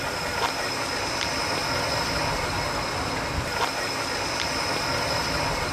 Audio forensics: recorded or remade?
recorded